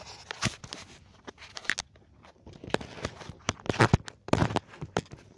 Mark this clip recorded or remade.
recorded